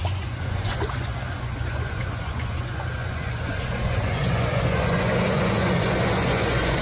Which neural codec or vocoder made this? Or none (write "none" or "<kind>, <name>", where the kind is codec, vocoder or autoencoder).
vocoder, Vocos